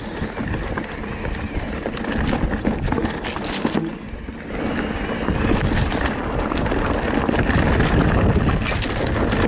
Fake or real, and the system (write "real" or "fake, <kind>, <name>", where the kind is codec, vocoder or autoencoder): real